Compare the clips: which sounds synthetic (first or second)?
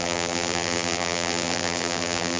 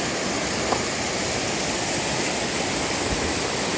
first